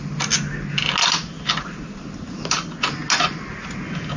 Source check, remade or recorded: recorded